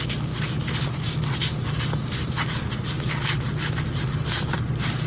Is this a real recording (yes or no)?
yes